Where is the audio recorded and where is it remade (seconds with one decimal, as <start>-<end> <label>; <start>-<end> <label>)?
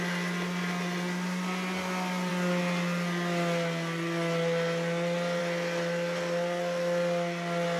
0.0-7.8 recorded